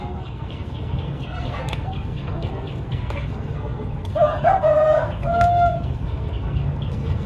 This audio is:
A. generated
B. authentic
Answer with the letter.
A